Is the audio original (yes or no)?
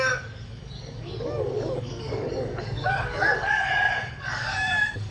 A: no